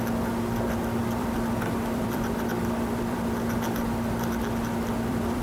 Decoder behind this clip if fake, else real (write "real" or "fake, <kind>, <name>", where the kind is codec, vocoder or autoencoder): fake, vocoder, BigVGAN v2